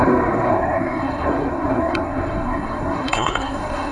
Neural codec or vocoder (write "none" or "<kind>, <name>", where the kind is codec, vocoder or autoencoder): codec, SNAC